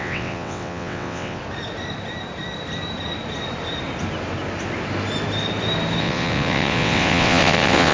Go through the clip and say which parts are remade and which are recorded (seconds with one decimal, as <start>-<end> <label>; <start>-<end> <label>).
0.0-1.4 remade; 1.4-6.0 recorded; 6.0-7.9 remade